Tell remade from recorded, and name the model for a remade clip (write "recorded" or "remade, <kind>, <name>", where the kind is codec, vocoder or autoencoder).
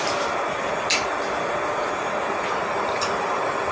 recorded